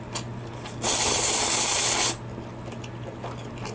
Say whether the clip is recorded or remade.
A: recorded